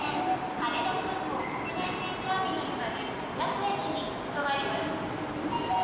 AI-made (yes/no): no